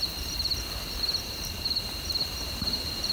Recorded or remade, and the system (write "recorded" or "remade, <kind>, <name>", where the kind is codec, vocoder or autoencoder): remade, vocoder, BigVGAN v2